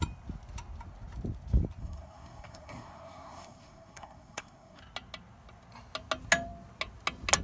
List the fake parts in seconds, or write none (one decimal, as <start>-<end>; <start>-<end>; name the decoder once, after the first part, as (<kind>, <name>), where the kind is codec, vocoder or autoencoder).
1.8-4.8 (codec, SNAC)